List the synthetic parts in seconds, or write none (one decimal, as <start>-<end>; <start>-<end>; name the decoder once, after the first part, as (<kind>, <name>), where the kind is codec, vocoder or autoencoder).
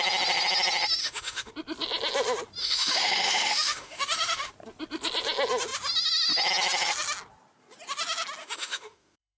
1.0-1.5 (autoencoder, DAC-VAE); 2.6-4.5; 8.4-9.4